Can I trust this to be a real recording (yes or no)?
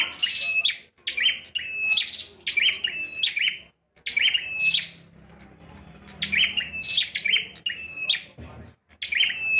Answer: yes